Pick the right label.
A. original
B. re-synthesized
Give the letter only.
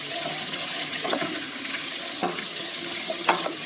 B